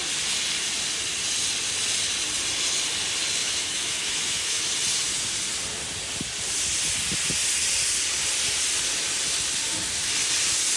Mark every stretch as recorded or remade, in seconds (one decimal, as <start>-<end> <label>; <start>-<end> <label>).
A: 0.0-3.4 recorded; 3.4-4.6 remade; 4.6-10.8 recorded